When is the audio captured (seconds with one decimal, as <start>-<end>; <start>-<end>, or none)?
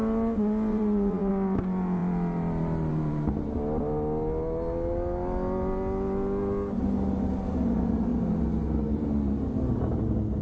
0.0-0.7; 1.3-10.4